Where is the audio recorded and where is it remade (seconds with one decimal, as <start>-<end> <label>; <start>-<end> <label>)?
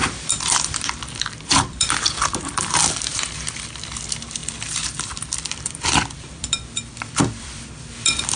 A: 0.0-8.4 remade